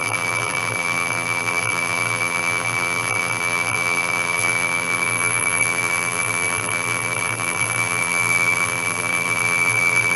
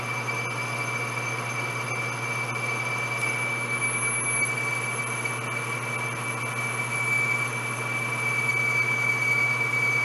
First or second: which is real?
second